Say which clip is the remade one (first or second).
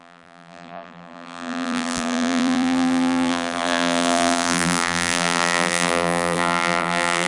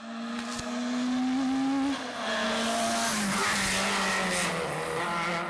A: first